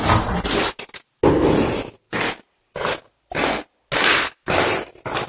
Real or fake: real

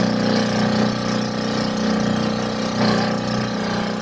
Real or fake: real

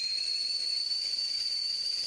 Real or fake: fake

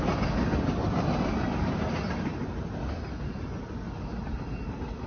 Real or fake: real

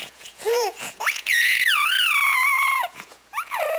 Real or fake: fake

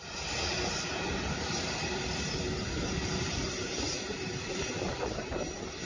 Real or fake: fake